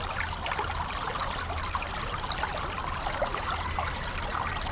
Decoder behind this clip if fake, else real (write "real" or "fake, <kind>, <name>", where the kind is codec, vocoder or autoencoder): real